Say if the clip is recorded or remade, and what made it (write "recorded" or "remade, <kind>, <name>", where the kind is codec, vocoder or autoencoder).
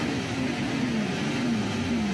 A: recorded